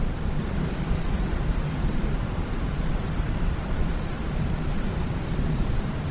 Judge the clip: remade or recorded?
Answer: remade